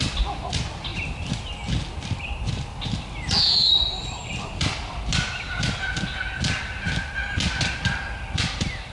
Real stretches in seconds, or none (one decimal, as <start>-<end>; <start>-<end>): 0.0-8.9